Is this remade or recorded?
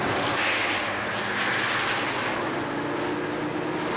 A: recorded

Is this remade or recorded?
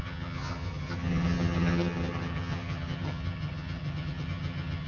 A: remade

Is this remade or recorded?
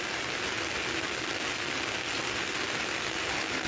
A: recorded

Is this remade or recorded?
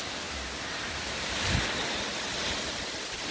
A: recorded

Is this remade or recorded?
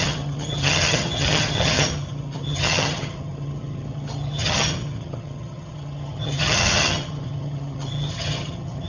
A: remade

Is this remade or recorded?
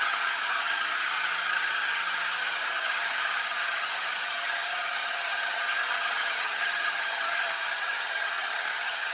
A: remade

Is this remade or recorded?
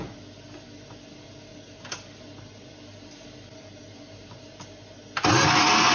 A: recorded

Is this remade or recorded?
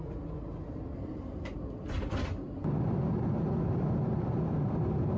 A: recorded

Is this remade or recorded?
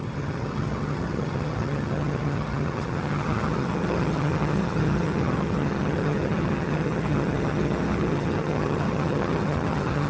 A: remade